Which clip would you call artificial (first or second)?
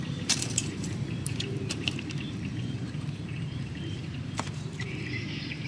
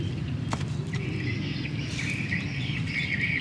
first